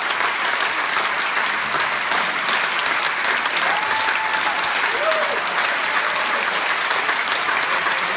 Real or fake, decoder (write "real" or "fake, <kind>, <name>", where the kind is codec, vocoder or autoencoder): real